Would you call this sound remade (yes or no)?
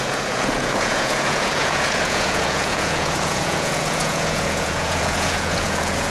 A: yes